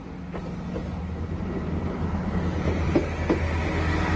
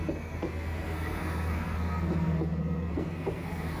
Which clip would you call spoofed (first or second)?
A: second